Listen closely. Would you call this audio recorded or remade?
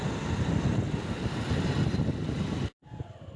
recorded